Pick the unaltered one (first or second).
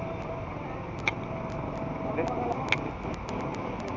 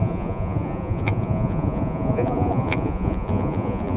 first